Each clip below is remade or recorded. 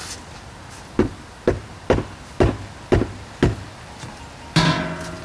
recorded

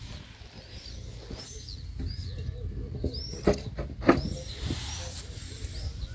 recorded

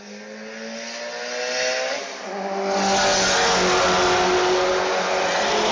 recorded